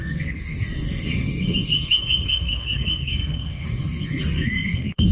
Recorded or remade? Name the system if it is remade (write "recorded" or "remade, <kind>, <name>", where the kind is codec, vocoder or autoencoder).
remade, codec, SNAC